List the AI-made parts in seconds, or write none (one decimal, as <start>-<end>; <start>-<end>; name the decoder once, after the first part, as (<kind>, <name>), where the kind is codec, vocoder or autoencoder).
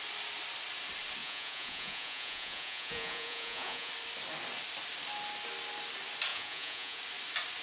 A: 1.2-3.9 (vocoder, Vocos); 6.3-7.0